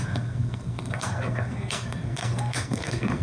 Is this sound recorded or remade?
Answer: remade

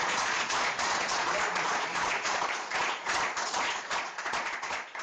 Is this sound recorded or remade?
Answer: remade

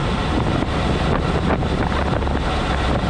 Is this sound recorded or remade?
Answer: recorded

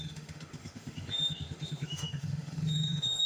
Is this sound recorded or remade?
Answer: remade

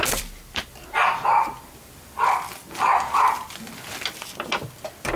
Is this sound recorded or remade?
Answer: remade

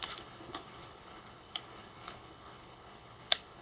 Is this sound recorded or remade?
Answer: remade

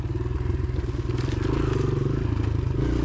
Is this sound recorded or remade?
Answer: recorded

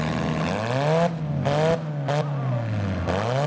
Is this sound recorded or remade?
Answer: recorded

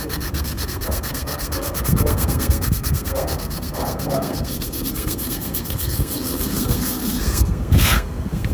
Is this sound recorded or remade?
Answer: remade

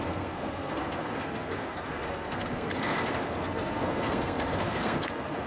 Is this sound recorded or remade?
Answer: remade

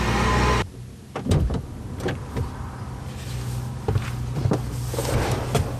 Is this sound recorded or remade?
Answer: recorded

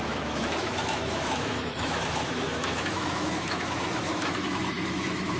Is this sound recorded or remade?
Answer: remade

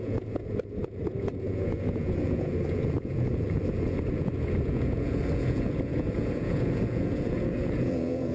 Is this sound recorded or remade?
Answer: remade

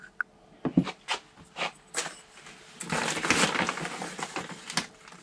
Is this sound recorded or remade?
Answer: recorded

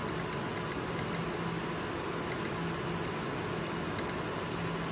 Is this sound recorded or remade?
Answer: recorded